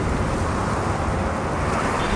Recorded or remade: recorded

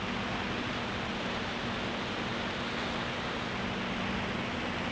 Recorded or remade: recorded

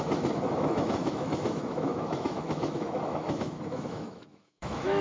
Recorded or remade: remade